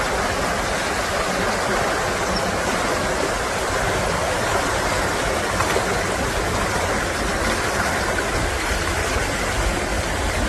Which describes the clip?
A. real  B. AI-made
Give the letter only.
A